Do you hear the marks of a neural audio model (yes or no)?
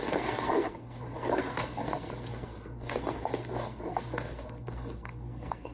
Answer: yes